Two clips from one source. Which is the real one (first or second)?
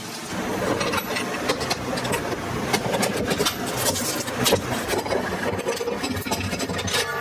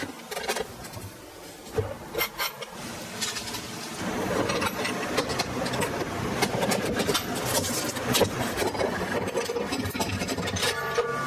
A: first